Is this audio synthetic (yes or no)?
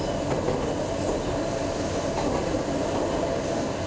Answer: no